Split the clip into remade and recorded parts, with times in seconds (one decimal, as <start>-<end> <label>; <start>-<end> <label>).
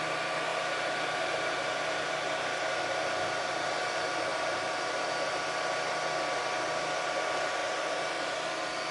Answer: 0.0-0.5 recorded; 0.5-2.5 remade; 2.5-4.3 recorded; 4.3-5.1 remade; 5.1-7.6 recorded; 7.6-8.4 remade; 8.4-8.9 recorded